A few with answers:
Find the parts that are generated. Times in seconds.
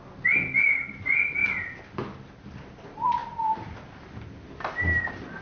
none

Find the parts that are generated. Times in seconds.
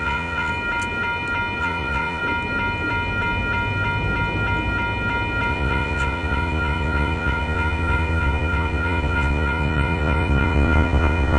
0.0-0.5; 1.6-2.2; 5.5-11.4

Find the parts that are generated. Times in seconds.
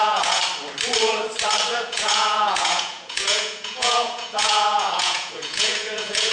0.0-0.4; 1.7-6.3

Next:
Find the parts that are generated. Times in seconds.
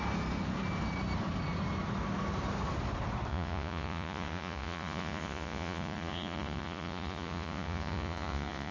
3.3-8.7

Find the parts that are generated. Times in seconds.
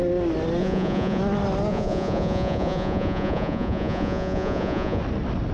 0.6-1.2; 1.7-5.0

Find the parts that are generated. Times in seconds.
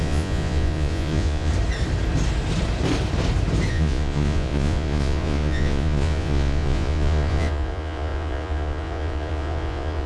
0.0-1.5; 3.7-10.1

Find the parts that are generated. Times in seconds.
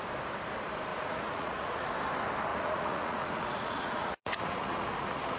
0.9-1.9; 2.5-5.4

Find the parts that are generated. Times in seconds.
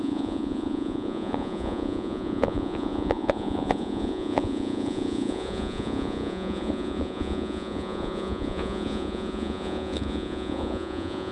0.0-11.3